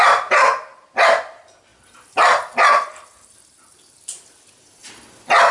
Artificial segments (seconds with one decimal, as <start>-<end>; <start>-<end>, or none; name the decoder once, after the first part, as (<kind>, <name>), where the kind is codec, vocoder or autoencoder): none